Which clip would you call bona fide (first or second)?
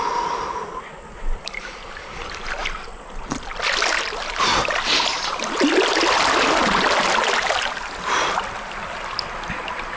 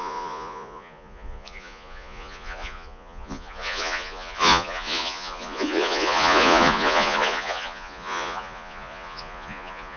first